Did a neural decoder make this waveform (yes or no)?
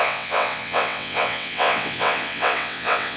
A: yes